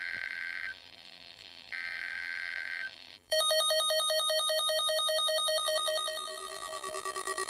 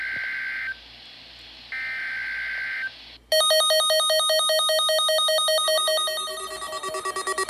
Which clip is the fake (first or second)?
first